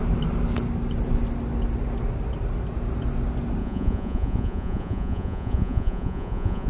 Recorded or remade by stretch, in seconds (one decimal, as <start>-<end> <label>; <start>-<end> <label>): 0.0-3.6 recorded; 3.6-6.7 remade